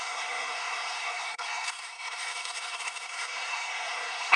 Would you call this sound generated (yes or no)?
yes